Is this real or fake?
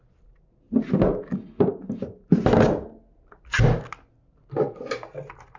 real